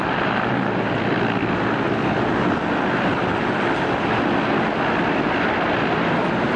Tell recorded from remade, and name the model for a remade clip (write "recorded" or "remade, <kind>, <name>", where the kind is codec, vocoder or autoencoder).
recorded